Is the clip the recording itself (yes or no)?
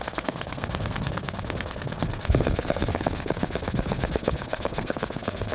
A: no